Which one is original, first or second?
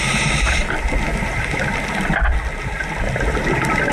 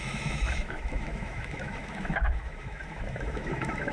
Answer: first